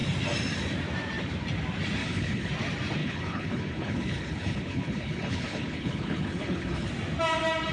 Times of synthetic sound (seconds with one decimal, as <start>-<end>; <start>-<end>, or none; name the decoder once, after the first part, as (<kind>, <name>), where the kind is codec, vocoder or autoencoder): 2.0-2.5 (codec, HILCodec); 3.0-6.9